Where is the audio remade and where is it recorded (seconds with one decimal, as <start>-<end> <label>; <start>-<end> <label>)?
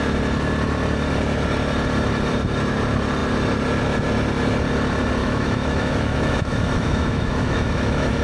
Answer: 0.0-5.2 recorded; 5.2-8.2 remade